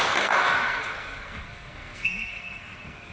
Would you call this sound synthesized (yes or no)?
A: yes